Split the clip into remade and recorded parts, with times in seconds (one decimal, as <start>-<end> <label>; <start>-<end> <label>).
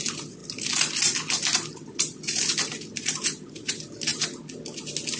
0.0-5.2 recorded